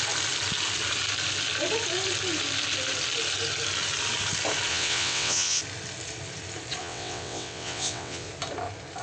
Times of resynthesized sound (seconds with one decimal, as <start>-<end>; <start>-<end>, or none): 4.7-5.6; 6.8-8.3